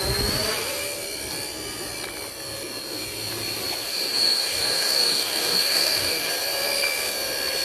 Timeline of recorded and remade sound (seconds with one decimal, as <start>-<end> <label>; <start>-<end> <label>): 0.0-3.9 recorded; 3.9-6.3 remade; 6.3-7.6 recorded